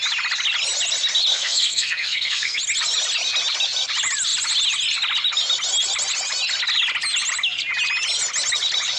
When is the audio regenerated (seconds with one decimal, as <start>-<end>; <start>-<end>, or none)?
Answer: 1.3-2.6